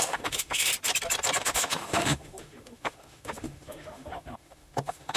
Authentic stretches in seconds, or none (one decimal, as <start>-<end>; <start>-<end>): 0.7-1.4